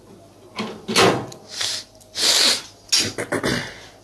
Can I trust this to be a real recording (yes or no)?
yes